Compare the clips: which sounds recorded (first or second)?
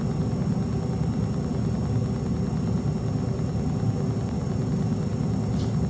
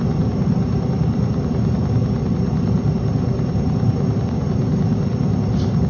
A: first